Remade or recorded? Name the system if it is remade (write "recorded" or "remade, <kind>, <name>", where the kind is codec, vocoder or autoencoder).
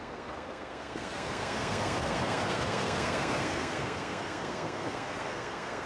remade, codec, SNAC